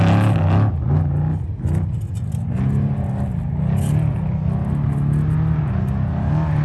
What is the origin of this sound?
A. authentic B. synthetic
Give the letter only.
A